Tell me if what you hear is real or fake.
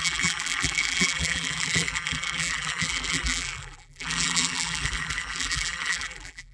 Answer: fake